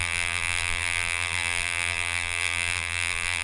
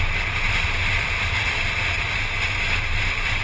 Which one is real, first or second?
second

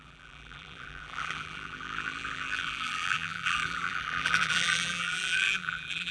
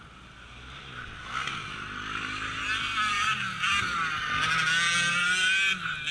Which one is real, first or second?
second